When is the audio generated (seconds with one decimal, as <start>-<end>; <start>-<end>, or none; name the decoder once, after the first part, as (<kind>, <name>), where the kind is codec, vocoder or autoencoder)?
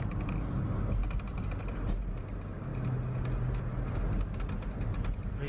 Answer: none